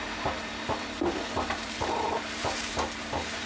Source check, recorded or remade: remade